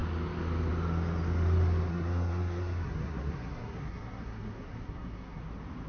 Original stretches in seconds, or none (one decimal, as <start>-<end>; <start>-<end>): 0.0-1.9; 5.4-5.9